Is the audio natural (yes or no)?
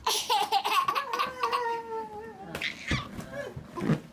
yes